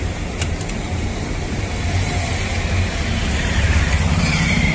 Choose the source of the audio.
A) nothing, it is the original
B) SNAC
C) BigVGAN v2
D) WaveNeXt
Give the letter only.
C